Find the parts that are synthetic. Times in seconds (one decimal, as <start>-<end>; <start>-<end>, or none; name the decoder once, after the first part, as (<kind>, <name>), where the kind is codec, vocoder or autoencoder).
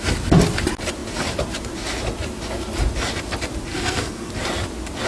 3.7-4.3 (codec, SNAC)